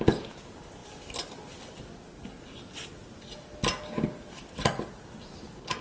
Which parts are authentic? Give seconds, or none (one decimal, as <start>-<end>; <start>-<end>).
0.0-5.8